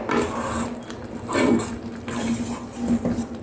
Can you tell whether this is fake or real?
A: real